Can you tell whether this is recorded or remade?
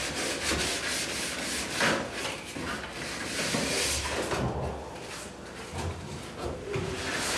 recorded